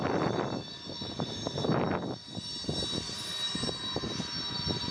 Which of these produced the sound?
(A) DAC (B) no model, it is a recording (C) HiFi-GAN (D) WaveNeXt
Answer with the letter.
B